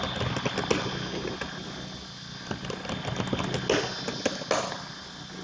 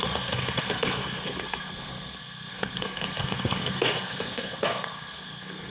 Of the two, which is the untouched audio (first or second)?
first